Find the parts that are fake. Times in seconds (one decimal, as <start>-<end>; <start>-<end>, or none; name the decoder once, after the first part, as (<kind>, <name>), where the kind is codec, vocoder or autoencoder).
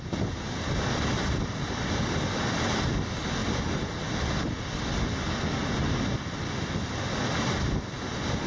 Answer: none